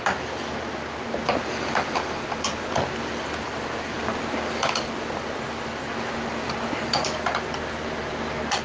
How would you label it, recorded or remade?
recorded